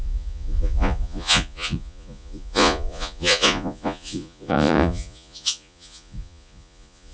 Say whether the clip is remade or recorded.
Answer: remade